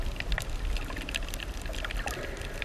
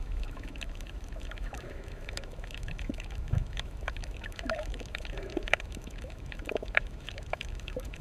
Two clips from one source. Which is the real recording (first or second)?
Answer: first